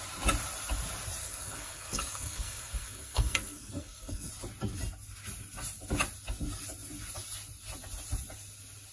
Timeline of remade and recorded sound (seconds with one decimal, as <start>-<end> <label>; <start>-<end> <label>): 0.0-1.2 recorded; 1.2-4.3 remade; 4.3-8.9 recorded